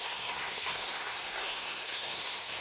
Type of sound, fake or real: fake